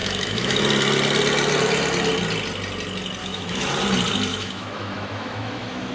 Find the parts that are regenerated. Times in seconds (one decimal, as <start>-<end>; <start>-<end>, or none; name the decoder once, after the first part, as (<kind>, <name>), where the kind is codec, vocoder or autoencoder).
0.0-0.6 (autoencoder, DAC-VAE); 3.2-3.7; 4.3-5.9